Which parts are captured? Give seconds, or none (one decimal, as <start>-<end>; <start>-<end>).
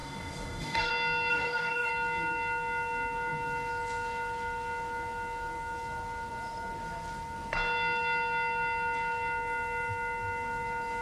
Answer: 0.9-1.3; 1.9-11.0